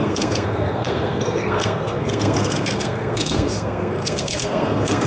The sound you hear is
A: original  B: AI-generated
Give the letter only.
B